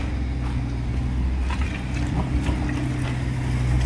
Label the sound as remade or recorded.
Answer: recorded